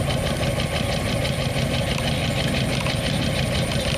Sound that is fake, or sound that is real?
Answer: real